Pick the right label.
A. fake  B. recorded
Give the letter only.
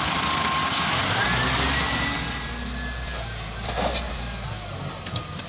B